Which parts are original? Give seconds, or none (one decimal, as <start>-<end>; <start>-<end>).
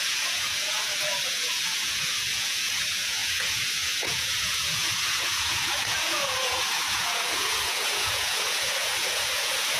none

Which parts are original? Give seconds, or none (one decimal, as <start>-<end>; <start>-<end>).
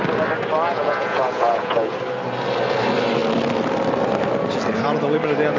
0.0-0.7; 2.0-5.6